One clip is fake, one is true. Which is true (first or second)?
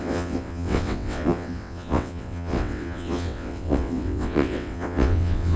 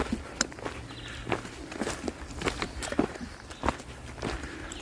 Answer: second